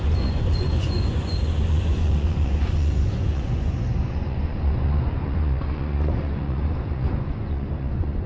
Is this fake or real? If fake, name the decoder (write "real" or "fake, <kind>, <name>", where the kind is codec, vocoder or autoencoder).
fake, vocoder, Vocos